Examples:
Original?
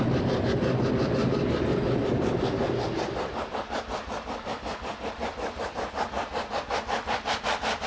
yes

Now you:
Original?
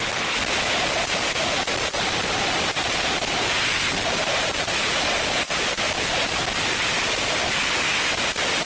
yes